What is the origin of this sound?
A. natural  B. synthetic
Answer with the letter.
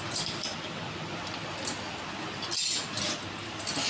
A